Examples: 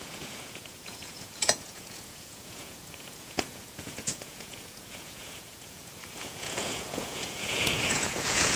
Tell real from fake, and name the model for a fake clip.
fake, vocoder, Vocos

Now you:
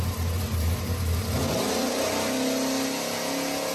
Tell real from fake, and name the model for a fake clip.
real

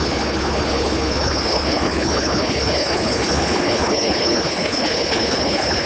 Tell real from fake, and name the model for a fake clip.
fake, codec, HILCodec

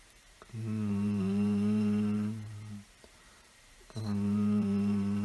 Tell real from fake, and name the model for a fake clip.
fake, vocoder, BigVGAN v2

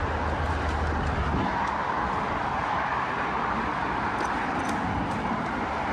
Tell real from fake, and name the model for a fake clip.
real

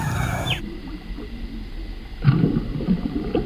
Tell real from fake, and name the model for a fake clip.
fake, vocoder, BigVGAN v2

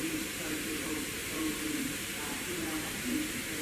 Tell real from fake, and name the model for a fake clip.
fake, vocoder, BigVGAN v2